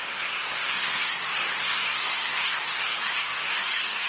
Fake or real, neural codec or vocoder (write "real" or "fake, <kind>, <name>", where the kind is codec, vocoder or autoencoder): fake, codec, SNAC